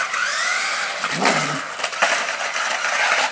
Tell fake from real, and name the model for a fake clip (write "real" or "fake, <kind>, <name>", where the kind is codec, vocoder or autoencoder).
real